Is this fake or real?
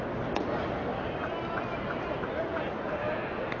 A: real